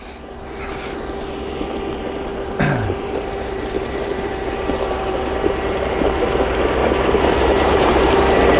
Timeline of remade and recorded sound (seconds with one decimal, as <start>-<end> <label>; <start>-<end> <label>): 0.0-2.3 recorded; 2.3-6.0 remade; 6.0-6.8 recorded; 6.8-8.2 remade; 8.2-8.6 recorded